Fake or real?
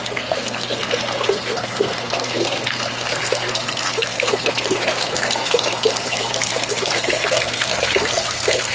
fake